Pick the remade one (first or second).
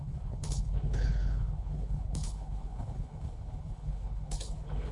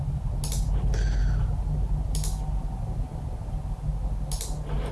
first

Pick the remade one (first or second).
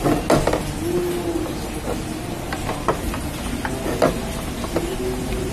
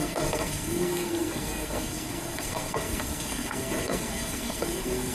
second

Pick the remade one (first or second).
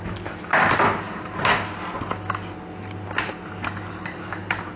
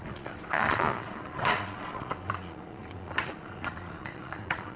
second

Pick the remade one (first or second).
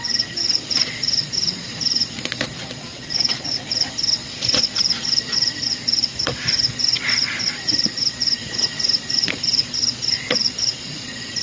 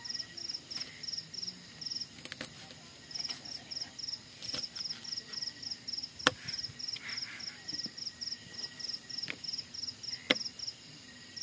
first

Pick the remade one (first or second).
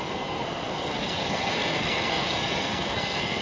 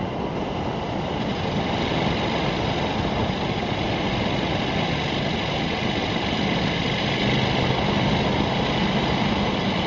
first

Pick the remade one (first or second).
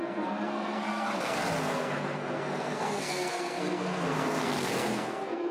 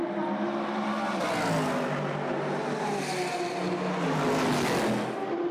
first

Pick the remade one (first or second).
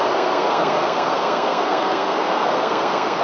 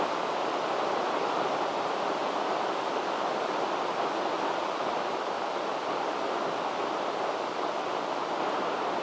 first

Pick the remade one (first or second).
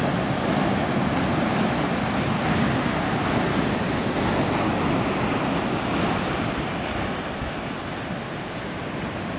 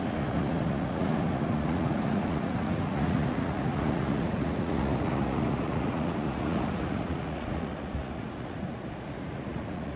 second